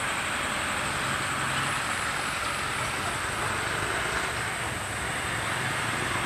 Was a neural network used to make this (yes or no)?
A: no